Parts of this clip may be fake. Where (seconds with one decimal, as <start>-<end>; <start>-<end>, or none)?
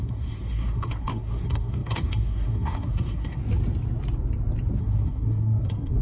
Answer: 0.0-3.4; 4.8-6.0